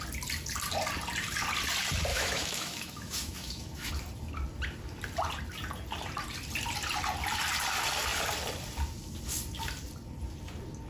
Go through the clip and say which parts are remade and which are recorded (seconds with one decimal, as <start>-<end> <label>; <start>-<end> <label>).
0.0-2.1 recorded; 2.1-3.9 remade; 3.9-10.9 recorded